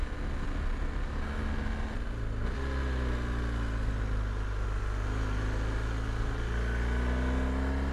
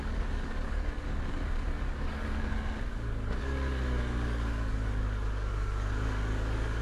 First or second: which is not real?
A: second